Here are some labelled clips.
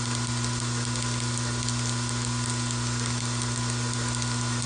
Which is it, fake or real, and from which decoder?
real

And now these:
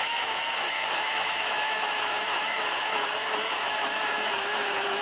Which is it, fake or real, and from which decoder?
fake, autoencoder, DAC-VAE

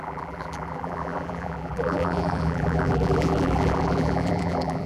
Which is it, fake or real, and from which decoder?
fake, vocoder, BigVGAN v2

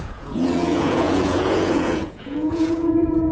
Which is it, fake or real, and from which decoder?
fake, vocoder, Vocos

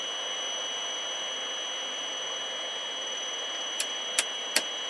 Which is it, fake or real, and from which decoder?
real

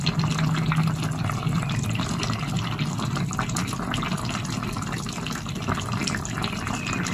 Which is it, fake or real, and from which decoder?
real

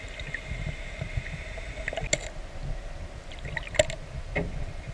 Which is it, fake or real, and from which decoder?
real